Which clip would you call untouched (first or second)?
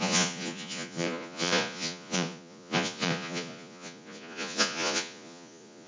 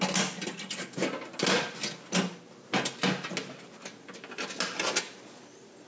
second